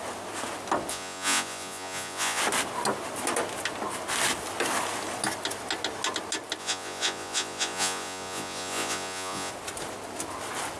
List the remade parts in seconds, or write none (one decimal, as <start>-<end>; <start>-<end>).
0.9-2.4; 6.6-9.5